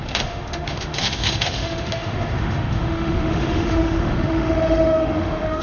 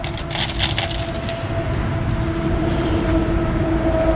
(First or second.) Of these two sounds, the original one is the second